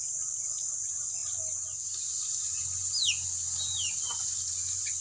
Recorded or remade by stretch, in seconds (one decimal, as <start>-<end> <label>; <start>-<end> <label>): 0.0-5.0 recorded